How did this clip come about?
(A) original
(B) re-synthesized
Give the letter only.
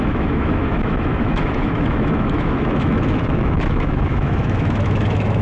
B